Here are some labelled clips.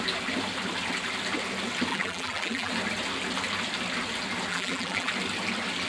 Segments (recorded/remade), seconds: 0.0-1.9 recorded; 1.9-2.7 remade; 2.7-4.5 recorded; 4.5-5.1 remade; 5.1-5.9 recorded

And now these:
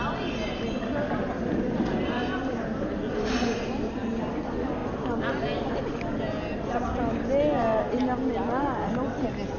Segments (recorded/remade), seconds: 0.0-9.6 recorded

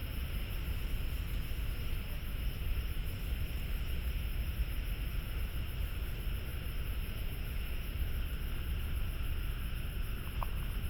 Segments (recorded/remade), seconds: 0.0-0.8 remade; 0.8-4.3 recorded; 4.3-5.7 remade; 5.7-10.9 recorded

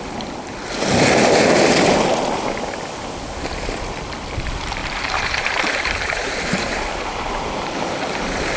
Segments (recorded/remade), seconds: 0.0-4.8 recorded; 4.8-7.9 remade; 7.9-8.6 recorded

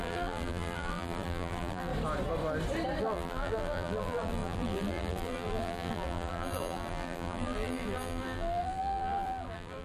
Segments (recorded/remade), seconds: 0.0-1.9 remade; 1.9-3.0 recorded; 3.0-9.8 remade

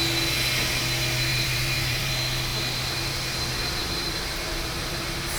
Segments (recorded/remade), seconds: 0.0-1.3 recorded; 1.3-2.1 remade; 2.1-3.8 recorded; 3.8-5.4 remade

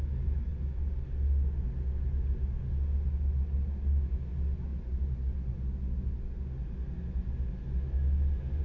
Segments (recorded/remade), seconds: 0.0-8.6 recorded

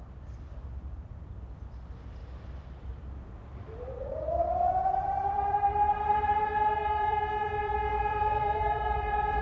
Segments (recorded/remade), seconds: 0.0-4.1 recorded; 4.1-9.4 remade